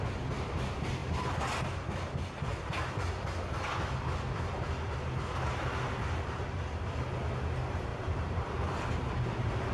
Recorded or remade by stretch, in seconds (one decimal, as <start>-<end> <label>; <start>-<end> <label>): 0.0-7.9 recorded; 7.9-9.7 remade

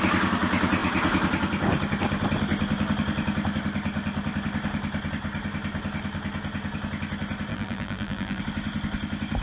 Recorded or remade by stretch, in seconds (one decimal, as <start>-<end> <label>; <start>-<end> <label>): 0.0-7.5 recorded; 7.5-8.4 remade; 8.4-9.4 recorded

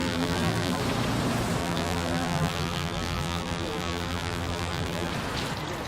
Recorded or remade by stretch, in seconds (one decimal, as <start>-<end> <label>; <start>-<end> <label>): 0.0-0.8 remade; 0.8-1.6 recorded; 1.6-5.1 remade; 5.1-5.9 recorded

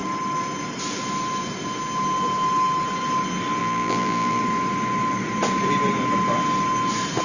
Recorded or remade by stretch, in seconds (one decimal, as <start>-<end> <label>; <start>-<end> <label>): 0.0-3.6 recorded; 3.6-4.4 remade; 4.4-7.2 recorded

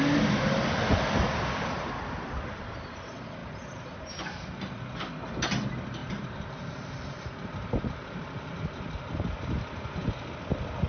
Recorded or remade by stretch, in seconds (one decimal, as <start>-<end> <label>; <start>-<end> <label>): 0.0-3.4 recorded; 3.4-4.8 remade; 4.8-6.0 recorded; 6.0-10.3 remade; 10.3-10.9 recorded

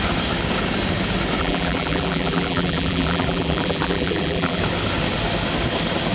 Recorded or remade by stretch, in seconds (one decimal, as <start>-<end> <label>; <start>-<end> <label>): 0.0-1.4 recorded; 1.4-4.6 remade; 4.6-6.1 recorded